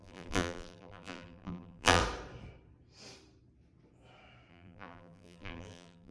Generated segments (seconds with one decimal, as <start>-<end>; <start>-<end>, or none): 0.0-2.0; 4.5-6.1